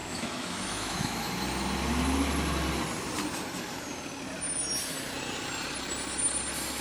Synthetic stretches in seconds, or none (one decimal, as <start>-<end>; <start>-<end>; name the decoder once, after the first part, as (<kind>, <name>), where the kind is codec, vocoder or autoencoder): 0.0-1.3 (autoencoder, DAC-VAE)